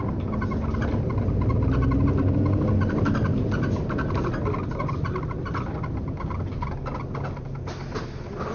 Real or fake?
real